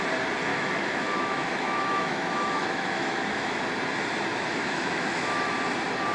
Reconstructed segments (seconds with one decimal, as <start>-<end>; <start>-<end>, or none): 0.5-3.6; 4.3-5.5